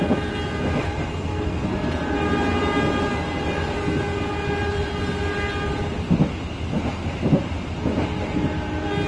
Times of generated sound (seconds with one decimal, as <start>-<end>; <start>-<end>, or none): 0.8-1.7